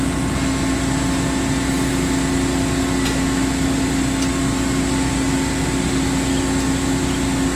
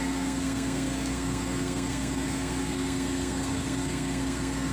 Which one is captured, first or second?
first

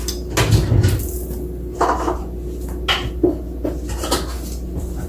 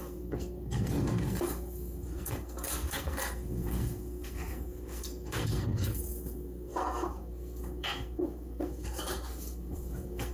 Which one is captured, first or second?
first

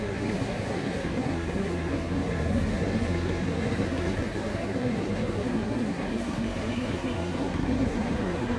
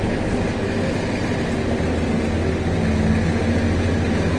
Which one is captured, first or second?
second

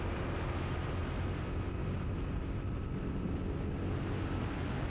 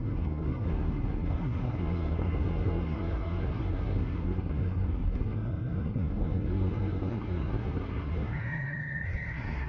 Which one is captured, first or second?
first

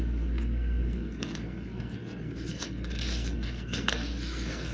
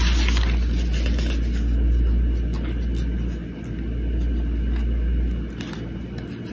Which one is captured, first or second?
second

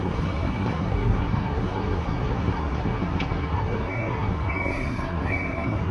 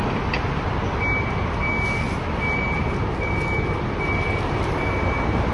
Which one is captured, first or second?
second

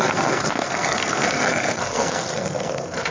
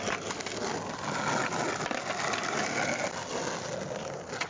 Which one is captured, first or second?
second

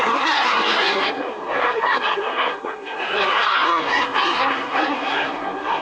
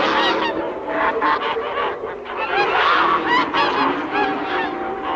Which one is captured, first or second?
second